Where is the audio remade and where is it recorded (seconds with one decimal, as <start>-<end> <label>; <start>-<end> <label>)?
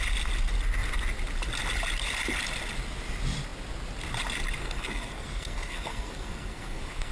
0.0-4.6 recorded; 4.6-7.1 remade